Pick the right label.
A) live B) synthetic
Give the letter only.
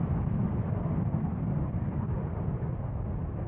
A